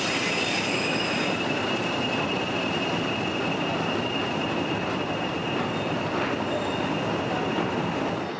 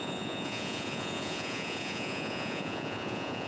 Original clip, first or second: first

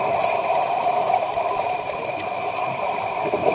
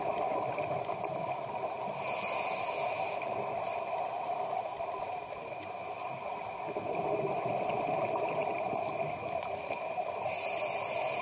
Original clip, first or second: second